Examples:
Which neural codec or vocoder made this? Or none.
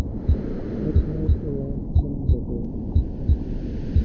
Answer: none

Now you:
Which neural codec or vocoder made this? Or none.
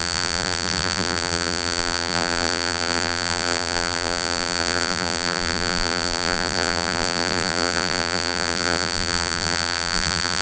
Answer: vocoder, BigVGAN v2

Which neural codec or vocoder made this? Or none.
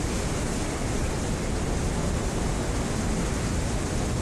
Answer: vocoder, BigVGAN v2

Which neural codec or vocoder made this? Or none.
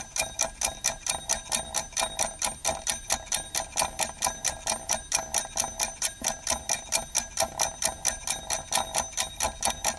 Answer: none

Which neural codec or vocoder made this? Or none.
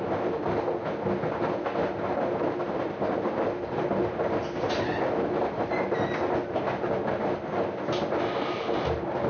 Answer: none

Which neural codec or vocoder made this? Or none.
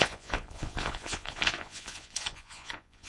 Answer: vocoder, Vocos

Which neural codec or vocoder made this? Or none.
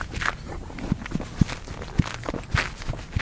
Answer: none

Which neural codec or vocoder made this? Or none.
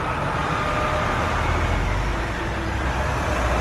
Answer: none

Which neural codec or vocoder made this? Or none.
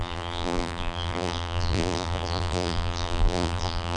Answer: vocoder, BigVGAN v2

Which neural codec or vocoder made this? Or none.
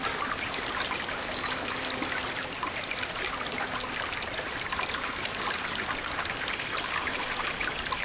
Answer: none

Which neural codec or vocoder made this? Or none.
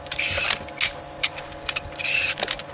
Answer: none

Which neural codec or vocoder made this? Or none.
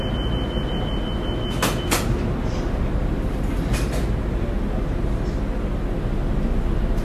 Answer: none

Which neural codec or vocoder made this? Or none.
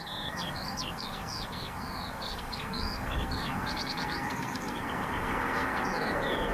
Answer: codec, SNAC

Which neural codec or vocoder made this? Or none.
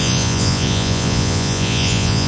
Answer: vocoder, Vocos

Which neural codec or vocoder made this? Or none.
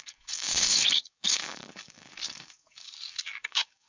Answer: codec, DAC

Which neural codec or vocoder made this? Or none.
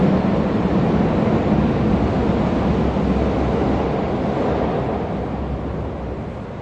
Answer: none